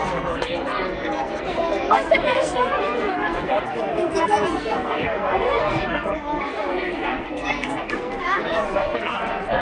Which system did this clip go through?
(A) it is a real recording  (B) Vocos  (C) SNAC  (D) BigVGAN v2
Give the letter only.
C